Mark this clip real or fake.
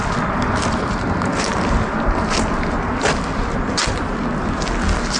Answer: real